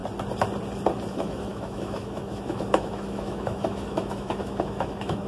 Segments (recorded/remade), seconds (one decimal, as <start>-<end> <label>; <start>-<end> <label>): 0.0-1.1 recorded; 1.1-5.3 remade